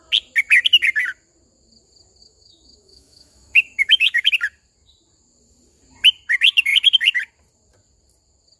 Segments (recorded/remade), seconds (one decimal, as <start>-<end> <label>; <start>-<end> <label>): 0.0-2.2 recorded; 2.2-4.3 remade; 4.3-8.6 recorded